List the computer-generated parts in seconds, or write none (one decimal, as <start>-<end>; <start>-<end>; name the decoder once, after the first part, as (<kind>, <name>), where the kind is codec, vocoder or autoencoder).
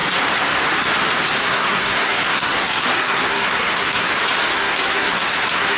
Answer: 1.4-4.1 (codec, SNAC); 4.5-5.8